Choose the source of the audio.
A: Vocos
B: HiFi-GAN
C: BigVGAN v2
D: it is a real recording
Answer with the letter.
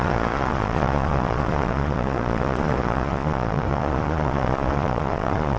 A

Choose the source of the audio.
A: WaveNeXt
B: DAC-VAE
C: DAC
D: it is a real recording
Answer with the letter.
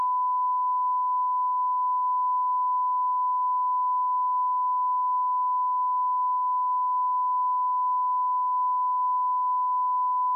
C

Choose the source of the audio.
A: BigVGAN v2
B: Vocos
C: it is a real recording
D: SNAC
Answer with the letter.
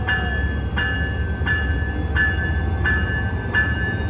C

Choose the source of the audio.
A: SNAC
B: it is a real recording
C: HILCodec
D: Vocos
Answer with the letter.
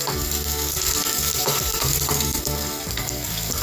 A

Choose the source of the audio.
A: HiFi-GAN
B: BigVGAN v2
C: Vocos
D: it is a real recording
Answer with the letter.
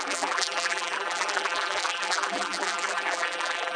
B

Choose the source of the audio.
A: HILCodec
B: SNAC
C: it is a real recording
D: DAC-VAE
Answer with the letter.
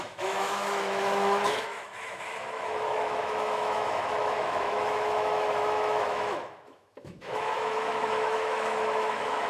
D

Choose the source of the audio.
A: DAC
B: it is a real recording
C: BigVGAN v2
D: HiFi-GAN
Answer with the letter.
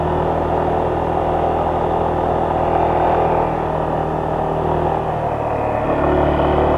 B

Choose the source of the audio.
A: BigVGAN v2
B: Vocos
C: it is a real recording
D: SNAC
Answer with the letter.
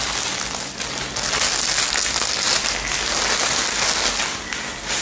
C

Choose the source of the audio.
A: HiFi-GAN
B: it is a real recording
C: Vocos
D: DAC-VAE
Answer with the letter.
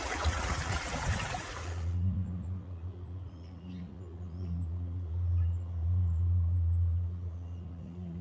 C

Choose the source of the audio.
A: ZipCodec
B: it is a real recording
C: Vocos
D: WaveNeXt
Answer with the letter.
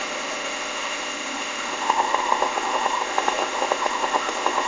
A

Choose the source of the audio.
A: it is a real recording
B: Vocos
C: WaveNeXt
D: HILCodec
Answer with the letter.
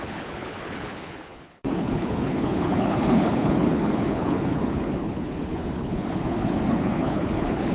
D